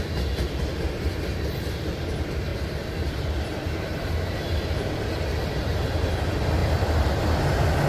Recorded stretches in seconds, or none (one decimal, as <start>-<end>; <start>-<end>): 0.0-2.5; 4.3-6.6; 7.5-7.9